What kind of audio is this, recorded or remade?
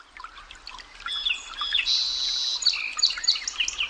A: recorded